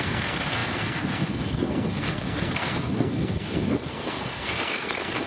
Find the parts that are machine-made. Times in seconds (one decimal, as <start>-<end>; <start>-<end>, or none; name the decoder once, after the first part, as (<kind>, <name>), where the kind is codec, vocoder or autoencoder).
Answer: 0.0-5.3 (codec, SNAC)

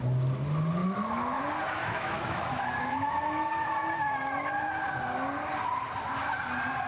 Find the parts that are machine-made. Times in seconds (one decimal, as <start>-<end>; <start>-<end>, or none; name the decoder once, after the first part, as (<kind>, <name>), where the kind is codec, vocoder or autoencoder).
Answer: 0.8-1.4 (autoencoder, DAC-VAE); 1.8-3.5